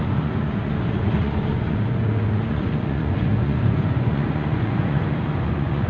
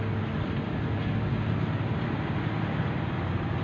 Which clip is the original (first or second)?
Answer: second